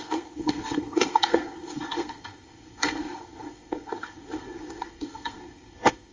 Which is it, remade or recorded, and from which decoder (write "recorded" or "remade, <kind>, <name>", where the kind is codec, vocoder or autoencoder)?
remade, codec, SNAC